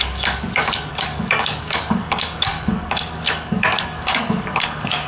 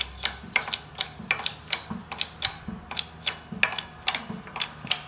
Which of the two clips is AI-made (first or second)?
first